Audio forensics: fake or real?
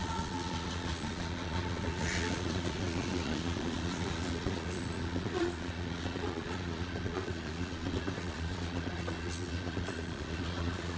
fake